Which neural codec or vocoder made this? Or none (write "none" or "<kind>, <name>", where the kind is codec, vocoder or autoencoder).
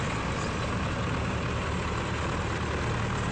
none